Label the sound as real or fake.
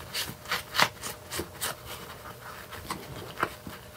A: real